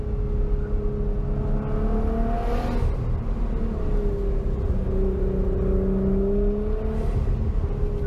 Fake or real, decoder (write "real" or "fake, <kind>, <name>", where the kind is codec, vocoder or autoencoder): real